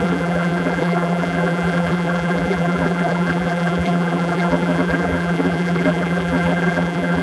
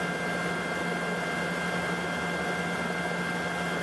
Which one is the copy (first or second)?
first